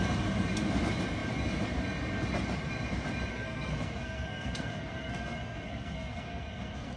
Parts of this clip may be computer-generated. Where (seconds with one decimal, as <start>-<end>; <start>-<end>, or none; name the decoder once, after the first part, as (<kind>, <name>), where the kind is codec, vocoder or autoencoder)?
3.3-7.0 (codec, SNAC)